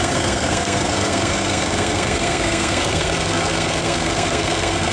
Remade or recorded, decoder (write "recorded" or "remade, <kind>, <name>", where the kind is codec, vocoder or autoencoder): remade, codec, SNAC